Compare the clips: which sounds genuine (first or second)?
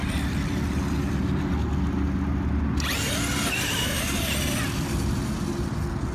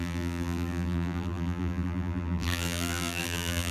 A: first